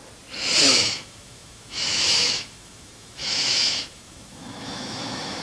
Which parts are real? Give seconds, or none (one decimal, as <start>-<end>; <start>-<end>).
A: 0.0-0.6